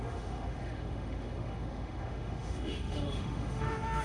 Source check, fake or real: fake